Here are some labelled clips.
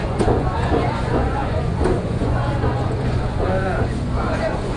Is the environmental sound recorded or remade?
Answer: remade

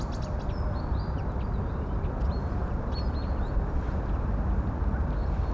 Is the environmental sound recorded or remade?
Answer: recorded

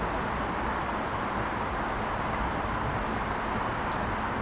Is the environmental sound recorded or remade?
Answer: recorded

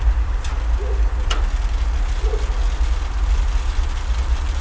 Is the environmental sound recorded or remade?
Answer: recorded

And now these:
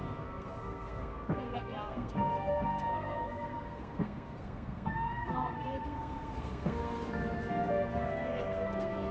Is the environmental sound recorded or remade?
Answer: remade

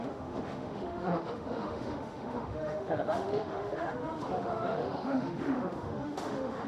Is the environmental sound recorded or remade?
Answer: remade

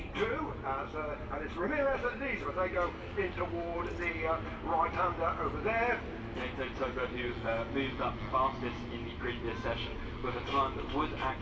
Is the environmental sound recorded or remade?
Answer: recorded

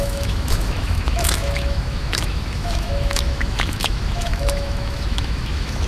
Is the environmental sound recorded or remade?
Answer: remade